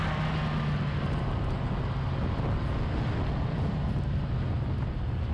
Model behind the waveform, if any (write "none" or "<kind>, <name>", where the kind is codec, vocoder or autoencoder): none